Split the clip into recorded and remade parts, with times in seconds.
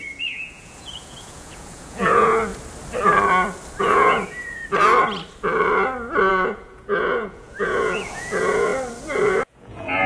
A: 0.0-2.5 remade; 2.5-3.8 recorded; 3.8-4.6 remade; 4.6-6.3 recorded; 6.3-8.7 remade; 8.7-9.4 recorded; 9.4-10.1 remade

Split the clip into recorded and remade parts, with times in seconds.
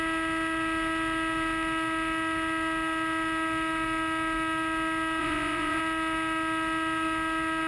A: 0.0-5.2 recorded; 5.2-5.8 remade; 5.8-7.7 recorded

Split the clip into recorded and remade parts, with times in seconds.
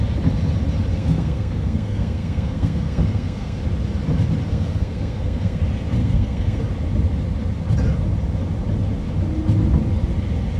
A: 0.0-0.9 recorded; 0.9-3.6 remade; 3.6-4.5 recorded; 4.5-5.6 remade; 5.6-6.0 recorded; 6.0-6.6 remade; 6.6-10.6 recorded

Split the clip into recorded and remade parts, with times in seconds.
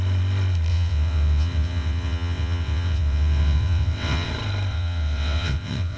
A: 0.0-0.7 recorded; 0.7-4.3 remade; 4.3-4.7 recorded; 4.7-6.0 remade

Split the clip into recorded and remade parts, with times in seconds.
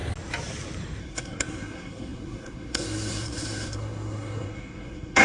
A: 0.0-1.0 recorded; 1.0-5.2 remade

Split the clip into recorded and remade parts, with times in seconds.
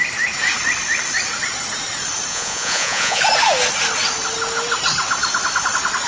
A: 0.0-2.3 recorded; 2.3-3.2 remade; 3.2-6.1 recorded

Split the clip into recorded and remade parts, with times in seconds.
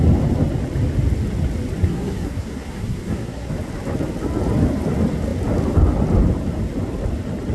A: 0.0-1.8 recorded; 1.8-3.5 remade; 3.5-7.5 recorded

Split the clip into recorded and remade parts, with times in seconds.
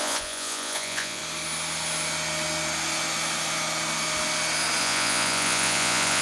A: 0.0-1.2 remade; 1.2-4.8 recorded; 4.8-6.2 remade